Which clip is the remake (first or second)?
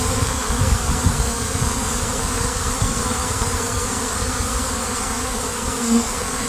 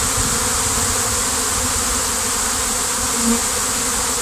first